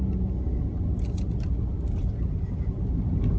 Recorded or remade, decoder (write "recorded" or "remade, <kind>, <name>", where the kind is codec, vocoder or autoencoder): recorded